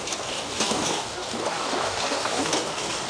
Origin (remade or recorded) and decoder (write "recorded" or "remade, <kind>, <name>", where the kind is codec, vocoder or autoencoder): remade, codec, DAC